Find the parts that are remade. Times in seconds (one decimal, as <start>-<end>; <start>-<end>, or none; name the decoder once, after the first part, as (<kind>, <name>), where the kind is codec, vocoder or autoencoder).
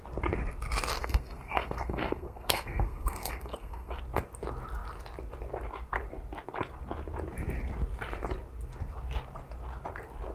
1.0-4.0 (codec, SNAC)